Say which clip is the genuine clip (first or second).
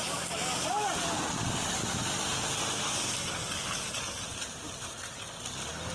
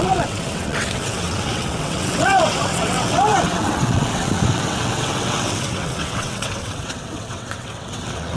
first